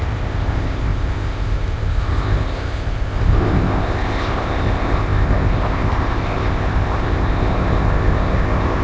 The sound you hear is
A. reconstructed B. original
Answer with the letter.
A